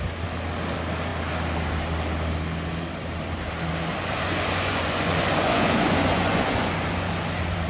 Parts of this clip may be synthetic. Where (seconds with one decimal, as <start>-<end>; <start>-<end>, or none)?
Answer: 3.9-7.7